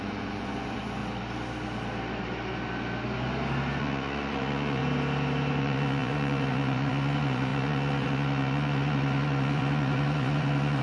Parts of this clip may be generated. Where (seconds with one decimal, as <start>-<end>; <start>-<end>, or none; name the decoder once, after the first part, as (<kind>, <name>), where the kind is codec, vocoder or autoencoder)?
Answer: 0.0-1.0 (vocoder, Vocos); 3.8-4.8; 5.6-10.8